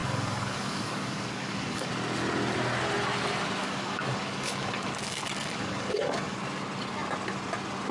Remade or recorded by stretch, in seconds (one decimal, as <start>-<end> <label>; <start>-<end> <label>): 0.0-1.9 remade; 1.9-3.6 recorded; 3.6-6.4 remade; 6.4-7.9 recorded